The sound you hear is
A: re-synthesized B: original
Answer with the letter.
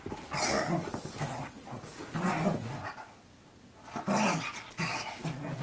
B